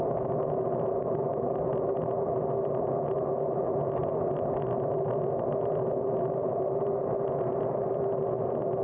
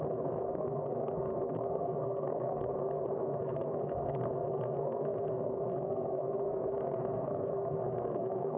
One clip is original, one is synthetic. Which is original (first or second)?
first